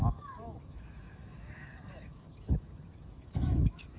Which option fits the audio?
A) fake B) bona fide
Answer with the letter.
A